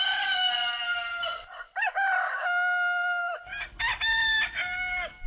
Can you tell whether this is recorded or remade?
recorded